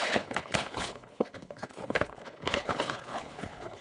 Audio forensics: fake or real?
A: fake